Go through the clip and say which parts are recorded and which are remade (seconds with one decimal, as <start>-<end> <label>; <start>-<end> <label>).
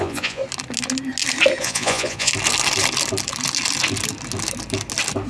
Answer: 0.0-0.4 remade; 0.4-1.6 recorded; 1.6-2.3 remade; 2.3-5.3 recorded